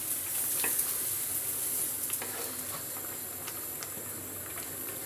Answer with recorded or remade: recorded